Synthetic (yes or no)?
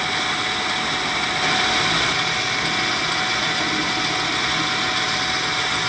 no